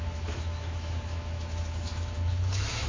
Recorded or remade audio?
remade